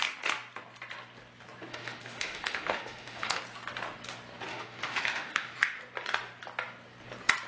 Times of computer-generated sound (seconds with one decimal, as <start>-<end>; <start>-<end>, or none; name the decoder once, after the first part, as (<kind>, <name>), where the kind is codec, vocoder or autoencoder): 1.7-3.4 (autoencoder, DAC-VAE); 4.5-5.8